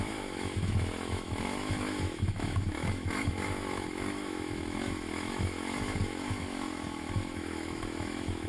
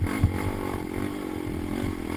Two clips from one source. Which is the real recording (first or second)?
second